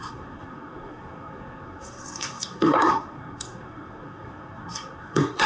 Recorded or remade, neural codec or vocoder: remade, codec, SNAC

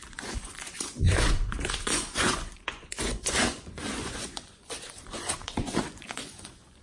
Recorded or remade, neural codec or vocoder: remade, vocoder, Vocos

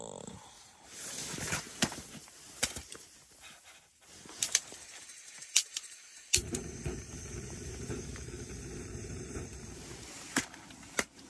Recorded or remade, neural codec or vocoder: remade, vocoder, BigVGAN v2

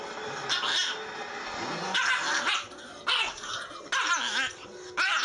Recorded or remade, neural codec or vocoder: recorded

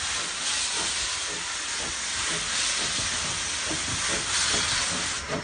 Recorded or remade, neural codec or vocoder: recorded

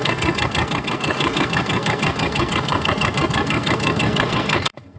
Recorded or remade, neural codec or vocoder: remade, codec, SNAC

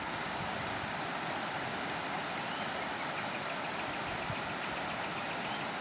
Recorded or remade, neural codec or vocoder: recorded